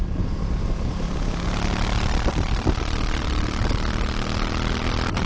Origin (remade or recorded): recorded